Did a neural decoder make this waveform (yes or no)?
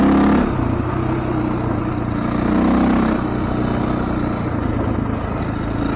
no